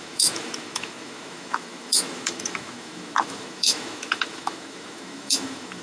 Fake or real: fake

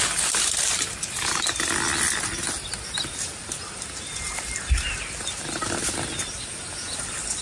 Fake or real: real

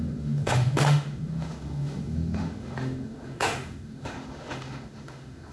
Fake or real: fake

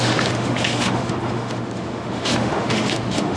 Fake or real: fake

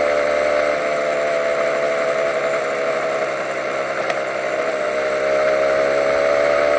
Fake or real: real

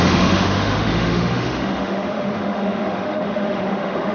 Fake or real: fake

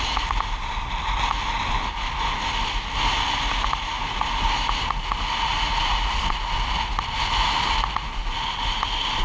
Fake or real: real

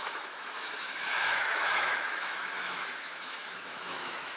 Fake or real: fake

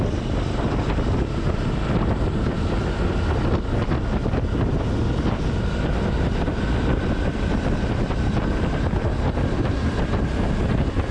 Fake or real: real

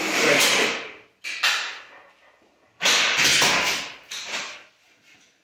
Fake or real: real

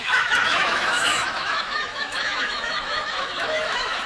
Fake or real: fake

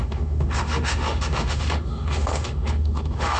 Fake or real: fake